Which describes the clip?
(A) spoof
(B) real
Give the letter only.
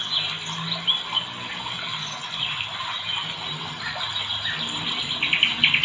B